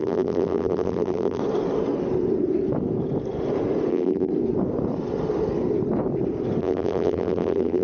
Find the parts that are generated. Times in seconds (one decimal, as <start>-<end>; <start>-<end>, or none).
0.0-1.4; 3.9-4.3; 6.6-7.8